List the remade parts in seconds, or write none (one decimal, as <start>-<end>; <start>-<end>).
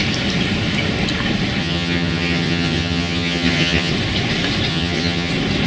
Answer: 1.6-3.9; 4.7-5.3